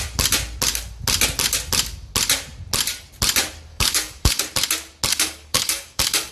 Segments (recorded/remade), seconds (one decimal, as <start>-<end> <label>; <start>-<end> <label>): 0.0-3.7 recorded; 3.7-4.4 remade; 4.4-5.1 recorded; 5.1-6.3 remade